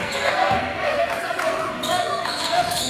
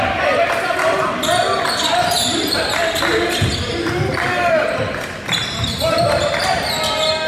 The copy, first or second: first